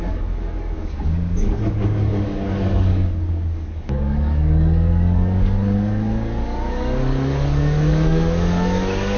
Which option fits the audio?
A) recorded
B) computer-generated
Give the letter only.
B